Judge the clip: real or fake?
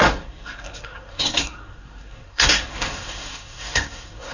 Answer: fake